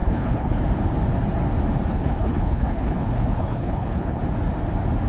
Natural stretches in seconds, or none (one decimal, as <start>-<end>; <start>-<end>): 0.6-1.9; 4.2-5.1